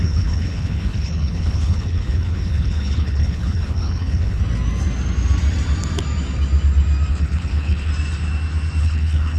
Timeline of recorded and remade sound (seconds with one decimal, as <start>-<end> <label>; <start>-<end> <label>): 0.0-4.4 remade; 4.4-7.1 recorded; 7.1-7.9 remade; 7.9-8.8 recorded; 8.8-9.4 remade